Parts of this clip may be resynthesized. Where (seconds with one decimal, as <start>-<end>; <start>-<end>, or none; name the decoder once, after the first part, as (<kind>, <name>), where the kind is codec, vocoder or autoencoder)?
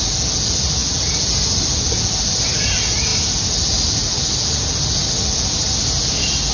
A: none